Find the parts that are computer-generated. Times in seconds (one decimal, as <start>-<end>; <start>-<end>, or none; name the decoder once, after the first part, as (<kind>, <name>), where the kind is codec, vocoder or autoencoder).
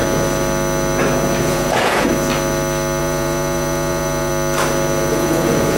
1.4-2.1 (vocoder, Vocos); 3.0-4.3; 5.1-5.8